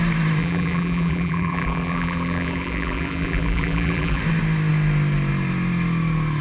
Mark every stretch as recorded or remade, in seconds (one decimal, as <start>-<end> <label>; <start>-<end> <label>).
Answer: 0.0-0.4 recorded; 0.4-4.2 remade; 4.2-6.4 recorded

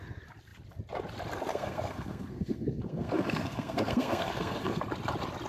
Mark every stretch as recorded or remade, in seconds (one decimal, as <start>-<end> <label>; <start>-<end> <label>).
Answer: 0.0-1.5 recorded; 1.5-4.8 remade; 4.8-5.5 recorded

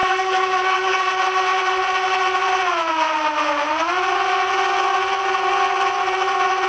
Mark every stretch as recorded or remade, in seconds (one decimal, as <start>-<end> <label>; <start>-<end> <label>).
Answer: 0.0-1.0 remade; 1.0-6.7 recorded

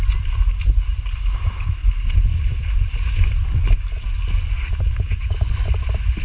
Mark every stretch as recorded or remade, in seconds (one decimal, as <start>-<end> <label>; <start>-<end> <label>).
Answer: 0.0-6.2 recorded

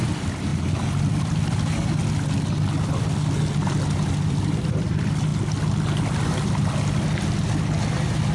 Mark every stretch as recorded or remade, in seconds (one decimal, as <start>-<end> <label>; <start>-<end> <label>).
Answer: 0.0-0.5 remade; 0.5-4.3 recorded; 4.3-5.3 remade; 5.3-7.9 recorded; 7.9-8.3 remade